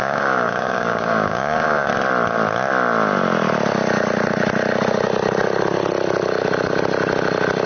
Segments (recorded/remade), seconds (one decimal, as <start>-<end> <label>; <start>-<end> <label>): 0.0-1.9 remade; 1.9-7.7 recorded